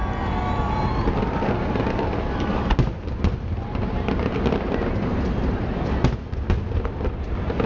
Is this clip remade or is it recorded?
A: recorded